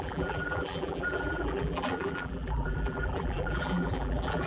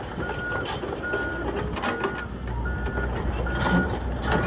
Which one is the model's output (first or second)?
first